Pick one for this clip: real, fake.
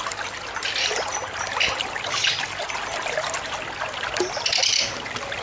real